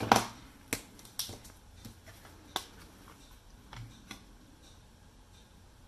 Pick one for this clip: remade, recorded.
recorded